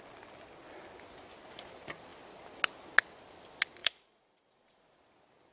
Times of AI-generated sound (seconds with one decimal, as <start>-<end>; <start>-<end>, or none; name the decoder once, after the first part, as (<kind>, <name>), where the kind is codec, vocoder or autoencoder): 3.8-5.0 (vocoder, Vocos)